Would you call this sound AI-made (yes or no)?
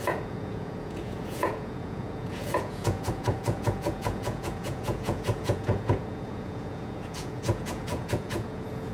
yes